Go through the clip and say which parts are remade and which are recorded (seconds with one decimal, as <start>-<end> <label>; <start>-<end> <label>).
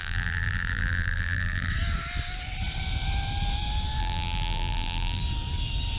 0.0-1.7 remade; 1.7-4.0 recorded; 4.0-5.2 remade; 5.2-6.0 recorded